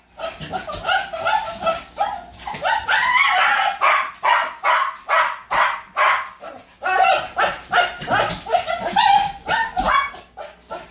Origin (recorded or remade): recorded